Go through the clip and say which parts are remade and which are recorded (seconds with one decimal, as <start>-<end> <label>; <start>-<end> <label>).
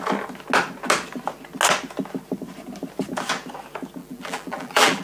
0.0-4.0 recorded; 4.0-5.0 remade